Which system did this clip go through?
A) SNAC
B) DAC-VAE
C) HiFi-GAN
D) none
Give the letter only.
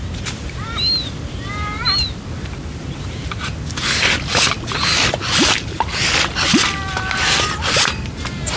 D